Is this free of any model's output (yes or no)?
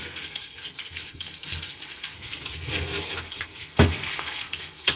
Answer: no